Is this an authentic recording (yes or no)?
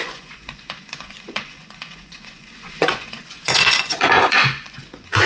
no